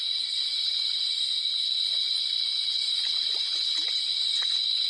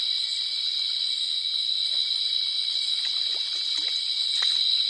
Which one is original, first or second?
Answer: second